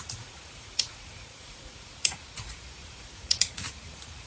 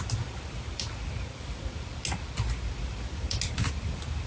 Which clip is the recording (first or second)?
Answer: second